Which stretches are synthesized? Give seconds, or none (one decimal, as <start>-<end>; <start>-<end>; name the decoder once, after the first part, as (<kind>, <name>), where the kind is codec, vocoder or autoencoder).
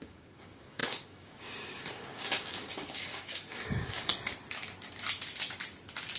0.0-4.1 (codec, DAC)